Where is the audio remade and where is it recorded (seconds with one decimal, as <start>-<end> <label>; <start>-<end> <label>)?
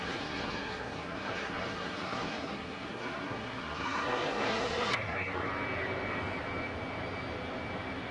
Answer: 0.0-5.5 remade; 5.5-8.1 recorded